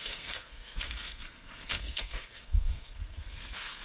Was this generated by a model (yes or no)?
yes